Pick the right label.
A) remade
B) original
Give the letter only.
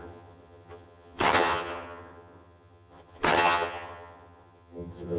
A